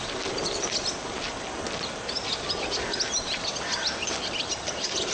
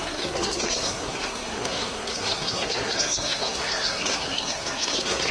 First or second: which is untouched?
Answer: first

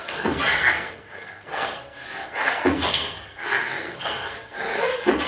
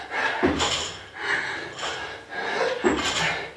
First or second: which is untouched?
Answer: second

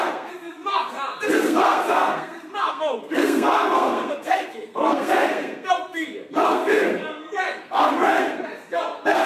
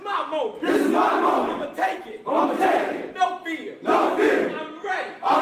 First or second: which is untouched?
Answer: second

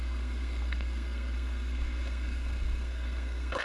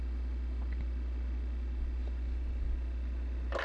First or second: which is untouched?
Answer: second